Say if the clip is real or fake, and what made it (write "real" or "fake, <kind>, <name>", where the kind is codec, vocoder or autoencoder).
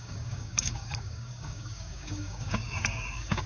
fake, codec, DAC